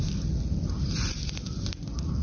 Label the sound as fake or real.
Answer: real